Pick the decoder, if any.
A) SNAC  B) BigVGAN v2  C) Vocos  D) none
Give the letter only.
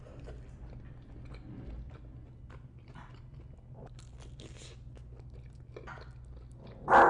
D